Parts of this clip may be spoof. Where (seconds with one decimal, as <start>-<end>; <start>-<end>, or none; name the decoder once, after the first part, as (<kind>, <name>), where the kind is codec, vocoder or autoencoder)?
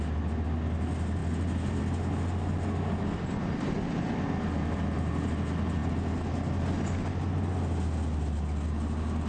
none